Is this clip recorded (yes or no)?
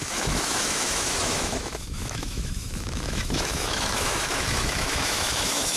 no